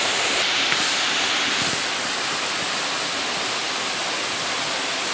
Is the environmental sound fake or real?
real